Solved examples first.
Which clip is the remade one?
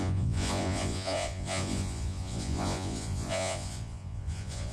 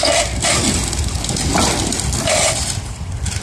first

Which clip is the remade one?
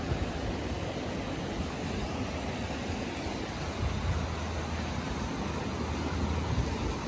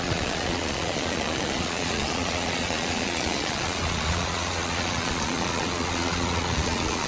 second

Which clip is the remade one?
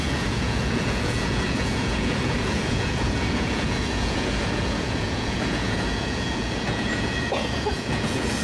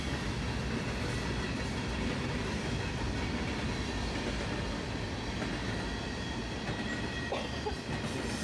first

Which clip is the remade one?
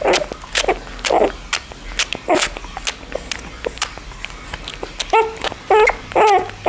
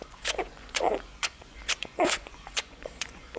second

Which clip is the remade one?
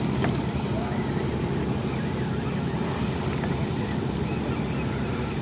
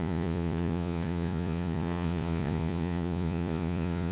second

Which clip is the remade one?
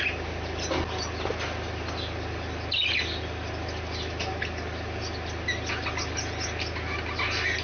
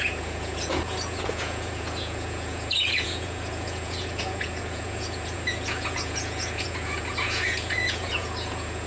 second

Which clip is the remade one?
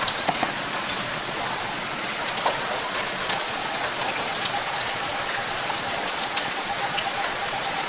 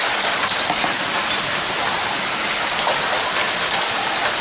first